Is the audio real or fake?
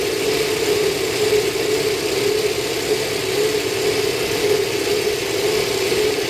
real